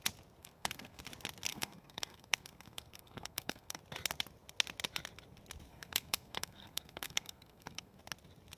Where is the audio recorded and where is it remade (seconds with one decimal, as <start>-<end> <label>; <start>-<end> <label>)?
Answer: 0.0-0.4 recorded; 0.4-1.0 remade; 1.0-1.5 recorded; 1.5-3.8 remade; 3.8-5.7 recorded; 5.7-8.0 remade; 8.0-8.6 recorded